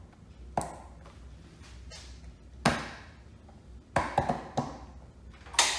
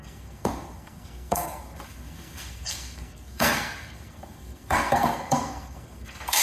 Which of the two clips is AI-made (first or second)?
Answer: second